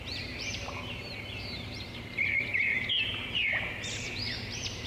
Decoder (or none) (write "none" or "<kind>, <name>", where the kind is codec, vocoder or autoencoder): vocoder, BigVGAN v2